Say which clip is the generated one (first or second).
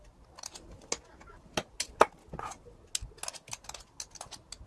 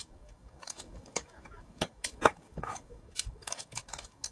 second